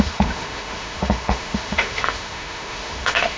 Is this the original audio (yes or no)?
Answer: no